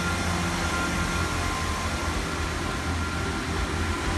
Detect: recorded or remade recorded